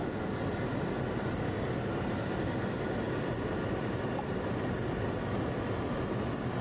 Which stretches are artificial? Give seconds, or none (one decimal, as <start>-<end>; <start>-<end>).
none